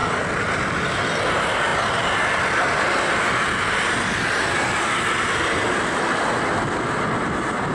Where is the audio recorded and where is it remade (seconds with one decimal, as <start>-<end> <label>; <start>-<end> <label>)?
0.0-7.7 recorded